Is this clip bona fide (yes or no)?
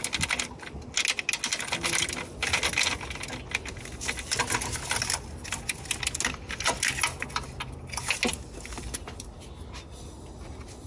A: yes